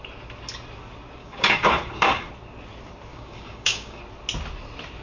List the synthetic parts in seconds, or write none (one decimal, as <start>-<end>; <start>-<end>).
1.2-2.3; 3.1-4.0